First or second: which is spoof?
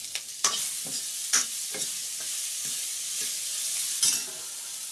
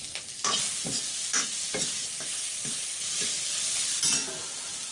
first